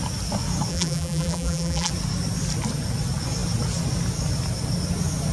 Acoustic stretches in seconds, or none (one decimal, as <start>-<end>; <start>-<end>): 0.0-0.7; 1.9-5.3